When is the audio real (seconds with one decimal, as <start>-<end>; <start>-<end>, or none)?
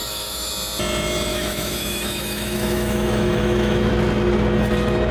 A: 0.5-1.3; 3.9-5.1